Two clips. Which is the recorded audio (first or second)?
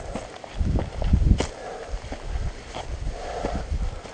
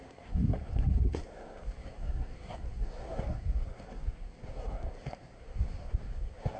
first